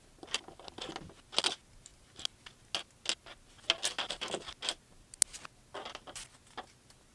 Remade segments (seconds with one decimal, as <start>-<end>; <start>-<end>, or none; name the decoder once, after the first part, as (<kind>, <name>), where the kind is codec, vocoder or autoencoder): none

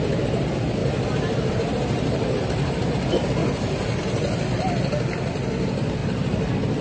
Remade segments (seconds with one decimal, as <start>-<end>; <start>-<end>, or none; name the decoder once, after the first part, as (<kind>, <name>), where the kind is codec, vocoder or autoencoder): 0.8-2.9 (vocoder, BigVGAN v2); 3.4-4.3

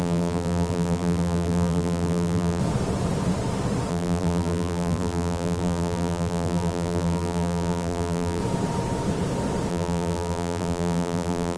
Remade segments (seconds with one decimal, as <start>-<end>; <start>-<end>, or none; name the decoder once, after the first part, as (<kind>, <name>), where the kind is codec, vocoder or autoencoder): 0.0-2.6 (vocoder, BigVGAN v2); 3.9-8.4; 9.7-11.6

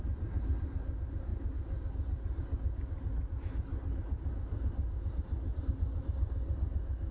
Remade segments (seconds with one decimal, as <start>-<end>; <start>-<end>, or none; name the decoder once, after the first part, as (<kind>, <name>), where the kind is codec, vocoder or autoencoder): none

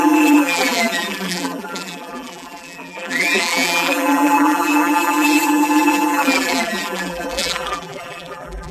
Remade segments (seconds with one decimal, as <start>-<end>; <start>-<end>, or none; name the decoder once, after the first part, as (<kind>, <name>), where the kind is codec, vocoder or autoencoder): 0.0-8.7 (vocoder, BigVGAN v2)